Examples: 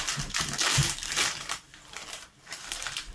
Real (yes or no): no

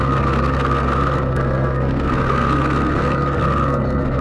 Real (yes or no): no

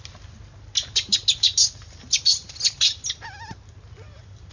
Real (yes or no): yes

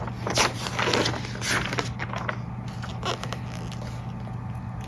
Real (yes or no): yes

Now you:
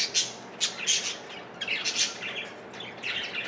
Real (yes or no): yes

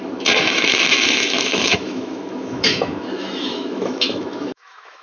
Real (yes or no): no